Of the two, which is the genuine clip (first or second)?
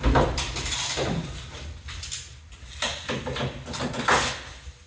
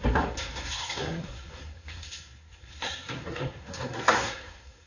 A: first